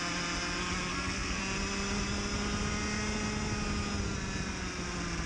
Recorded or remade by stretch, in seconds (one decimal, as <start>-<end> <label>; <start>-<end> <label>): 0.0-0.9 recorded; 0.9-1.4 remade; 1.4-5.3 recorded